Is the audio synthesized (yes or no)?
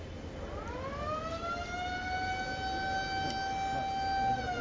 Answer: no